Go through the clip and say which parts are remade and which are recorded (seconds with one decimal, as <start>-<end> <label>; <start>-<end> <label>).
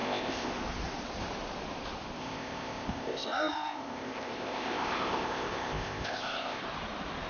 0.0-0.5 remade; 0.5-2.2 recorded; 2.2-6.6 remade; 6.6-7.3 recorded